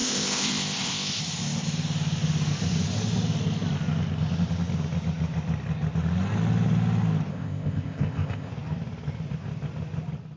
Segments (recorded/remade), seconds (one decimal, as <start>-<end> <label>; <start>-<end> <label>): 0.0-1.2 remade; 1.2-7.3 recorded; 7.3-8.5 remade; 8.5-10.4 recorded